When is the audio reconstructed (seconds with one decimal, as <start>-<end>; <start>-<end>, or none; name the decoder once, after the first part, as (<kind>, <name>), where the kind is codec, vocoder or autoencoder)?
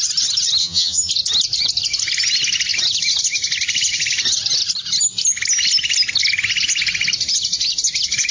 0.6-1.1 (vocoder, HiFi-GAN)